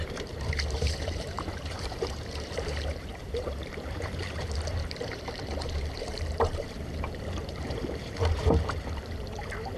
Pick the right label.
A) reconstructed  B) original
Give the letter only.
A